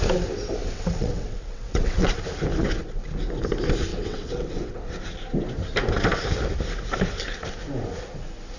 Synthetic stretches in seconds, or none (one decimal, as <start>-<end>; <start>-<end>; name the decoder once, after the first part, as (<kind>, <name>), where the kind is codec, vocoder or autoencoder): 0.6-2.2 (vocoder, WaveNeXt); 3.9-4.9